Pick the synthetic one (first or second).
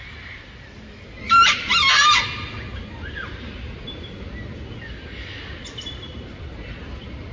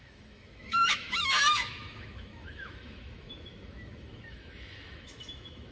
second